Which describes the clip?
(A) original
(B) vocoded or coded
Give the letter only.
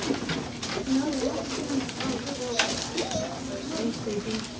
A